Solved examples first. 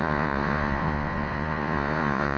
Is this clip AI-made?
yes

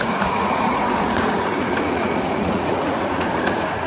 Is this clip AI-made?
yes